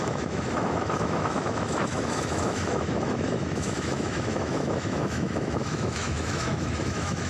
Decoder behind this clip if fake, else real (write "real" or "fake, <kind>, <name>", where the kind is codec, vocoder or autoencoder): fake, autoencoder, DAC-VAE